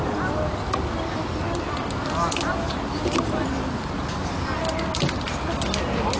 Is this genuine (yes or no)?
yes